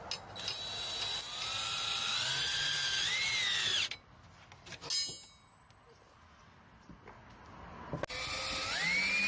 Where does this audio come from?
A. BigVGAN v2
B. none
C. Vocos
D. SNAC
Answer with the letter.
B